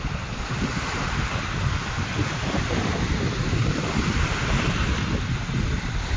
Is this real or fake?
real